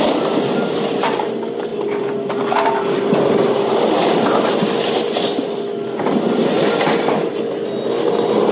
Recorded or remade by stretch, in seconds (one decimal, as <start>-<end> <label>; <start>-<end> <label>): 0.0-8.5 recorded